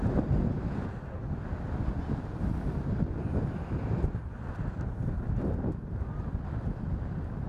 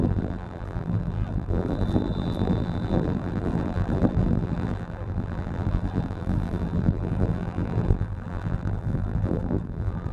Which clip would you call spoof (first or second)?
second